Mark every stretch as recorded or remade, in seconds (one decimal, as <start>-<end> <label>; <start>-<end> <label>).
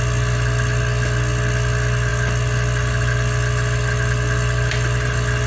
0.0-5.5 recorded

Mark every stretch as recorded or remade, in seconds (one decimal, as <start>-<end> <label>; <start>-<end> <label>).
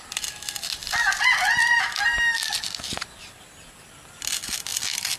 0.0-5.2 recorded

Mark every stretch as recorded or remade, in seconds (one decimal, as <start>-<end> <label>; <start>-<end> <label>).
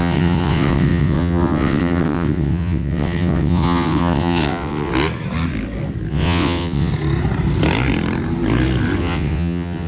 0.0-4.9 remade; 4.9-6.1 recorded; 6.1-6.9 remade; 6.9-9.0 recorded; 9.0-9.9 remade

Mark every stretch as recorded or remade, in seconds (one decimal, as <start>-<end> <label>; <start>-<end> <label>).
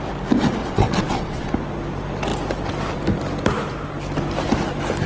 0.0-0.6 recorded; 0.6-1.5 remade; 1.5-5.1 recorded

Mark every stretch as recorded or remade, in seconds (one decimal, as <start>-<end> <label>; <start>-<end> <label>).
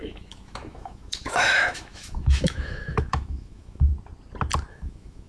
0.0-3.9 remade; 3.9-4.7 recorded; 4.7-5.3 remade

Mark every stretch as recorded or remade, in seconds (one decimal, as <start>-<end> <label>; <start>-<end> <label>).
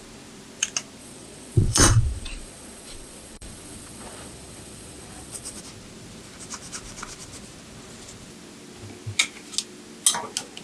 0.0-1.0 recorded; 1.0-5.6 remade; 5.6-10.6 recorded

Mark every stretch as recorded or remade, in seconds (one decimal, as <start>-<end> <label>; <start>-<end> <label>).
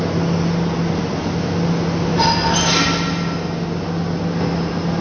0.0-5.0 recorded